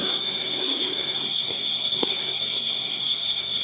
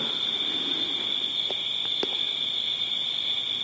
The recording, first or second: second